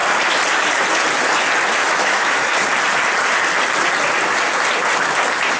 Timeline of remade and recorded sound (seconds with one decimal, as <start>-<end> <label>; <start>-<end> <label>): 0.0-1.8 recorded; 1.8-2.7 remade; 2.7-5.6 recorded